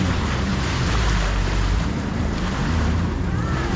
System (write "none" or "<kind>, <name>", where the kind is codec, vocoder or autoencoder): vocoder, BigVGAN v2